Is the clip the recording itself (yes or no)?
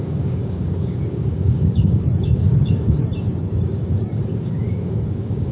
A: no